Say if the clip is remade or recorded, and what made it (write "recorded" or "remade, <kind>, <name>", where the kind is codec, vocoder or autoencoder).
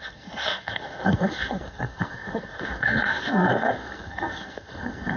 remade, codec, SNAC